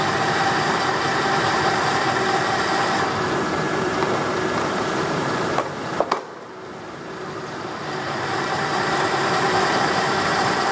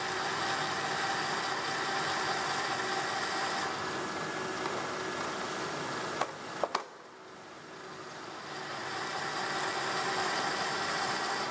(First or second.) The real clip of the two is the second